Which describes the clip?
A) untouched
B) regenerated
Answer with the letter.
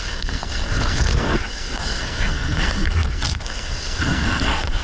B